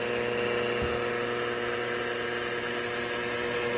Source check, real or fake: real